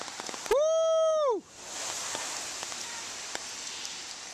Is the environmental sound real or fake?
real